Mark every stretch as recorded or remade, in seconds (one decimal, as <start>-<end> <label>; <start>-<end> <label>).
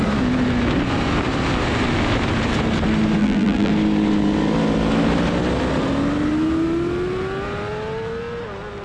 0.0-3.2 recorded; 3.2-3.7 remade; 3.7-8.8 recorded